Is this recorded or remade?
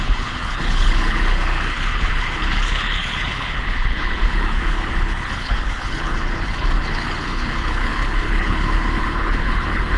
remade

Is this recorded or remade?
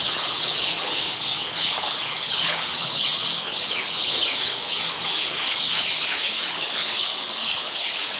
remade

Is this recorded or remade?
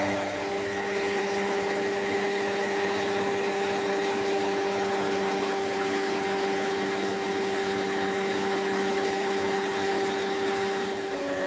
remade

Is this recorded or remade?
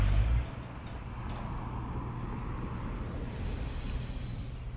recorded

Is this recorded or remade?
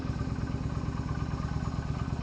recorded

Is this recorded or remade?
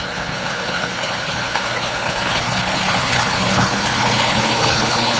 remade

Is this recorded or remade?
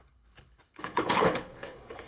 remade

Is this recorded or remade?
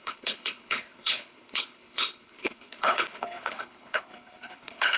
remade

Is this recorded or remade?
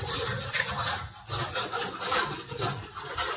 recorded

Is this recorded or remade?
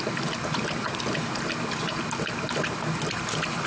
recorded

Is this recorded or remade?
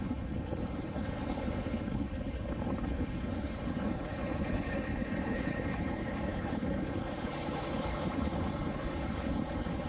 remade